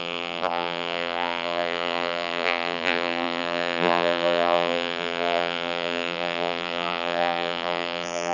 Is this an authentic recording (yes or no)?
no